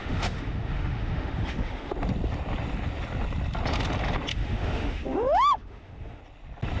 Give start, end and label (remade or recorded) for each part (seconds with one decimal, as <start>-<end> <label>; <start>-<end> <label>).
0.0-1.9 remade; 1.9-4.3 recorded; 4.3-6.2 remade; 6.2-6.8 recorded